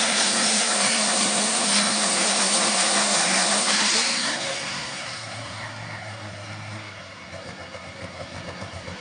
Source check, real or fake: fake